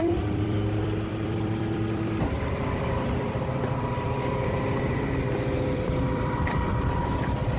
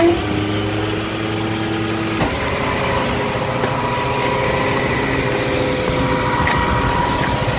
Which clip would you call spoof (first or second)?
first